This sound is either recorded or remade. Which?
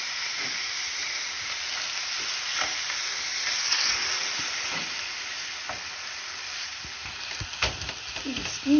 recorded